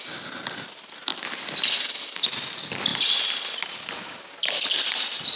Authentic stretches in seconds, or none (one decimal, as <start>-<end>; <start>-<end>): 0.0-1.1; 1.6-5.3